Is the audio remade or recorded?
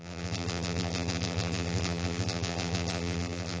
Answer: remade